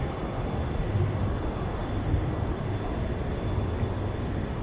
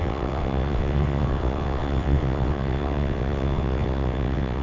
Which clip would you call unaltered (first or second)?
first